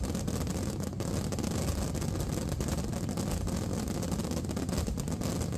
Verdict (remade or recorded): recorded